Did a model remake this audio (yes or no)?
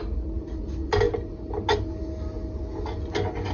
no